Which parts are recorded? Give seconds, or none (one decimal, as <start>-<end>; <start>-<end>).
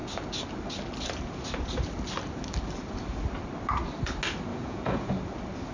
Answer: 0.0-4.5; 5.1-5.7